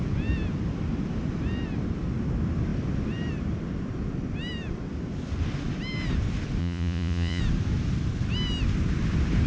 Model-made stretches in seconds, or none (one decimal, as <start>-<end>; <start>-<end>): 6.6-7.4